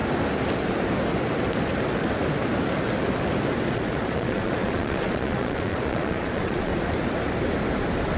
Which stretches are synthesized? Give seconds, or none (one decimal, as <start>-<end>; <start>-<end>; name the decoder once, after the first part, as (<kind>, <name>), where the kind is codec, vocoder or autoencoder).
3.7-6.7 (vocoder, Vocos)